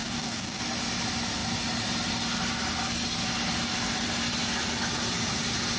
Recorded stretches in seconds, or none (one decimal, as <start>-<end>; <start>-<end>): 0.6-5.8